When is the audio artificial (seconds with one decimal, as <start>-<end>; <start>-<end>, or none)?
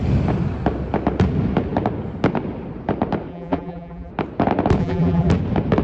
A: 3.3-4.1; 4.8-5.3